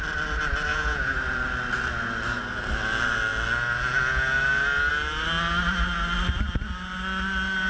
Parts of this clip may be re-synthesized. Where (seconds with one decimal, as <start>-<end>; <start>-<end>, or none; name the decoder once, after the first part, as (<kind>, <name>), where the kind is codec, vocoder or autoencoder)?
0.7-1.2 (vocoder, Vocos)